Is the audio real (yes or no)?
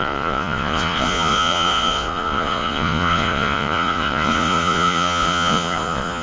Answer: no